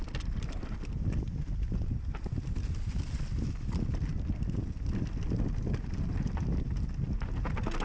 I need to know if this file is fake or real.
real